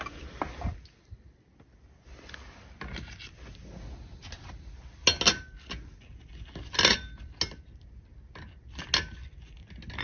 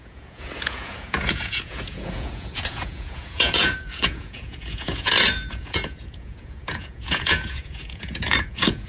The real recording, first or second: first